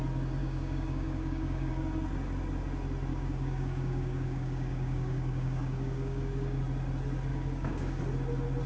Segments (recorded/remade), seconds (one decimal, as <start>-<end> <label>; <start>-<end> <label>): 0.0-0.4 recorded; 0.4-1.7 remade; 1.7-3.1 recorded; 3.1-6.6 remade; 6.6-7.3 recorded; 7.3-8.0 remade; 8.0-8.7 recorded